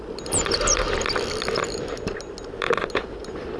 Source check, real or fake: real